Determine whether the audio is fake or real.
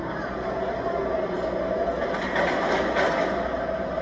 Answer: real